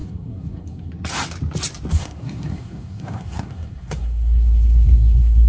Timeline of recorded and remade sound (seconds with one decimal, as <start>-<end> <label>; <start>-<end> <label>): 0.0-0.9 remade; 0.9-1.9 recorded; 1.9-5.5 remade